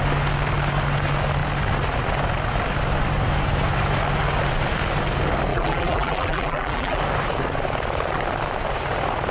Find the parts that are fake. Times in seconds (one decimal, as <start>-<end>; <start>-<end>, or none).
5.5-7.0